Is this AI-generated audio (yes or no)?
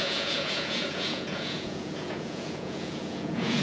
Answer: yes